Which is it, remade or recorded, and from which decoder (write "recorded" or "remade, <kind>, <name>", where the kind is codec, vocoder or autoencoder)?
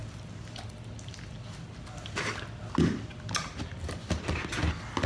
recorded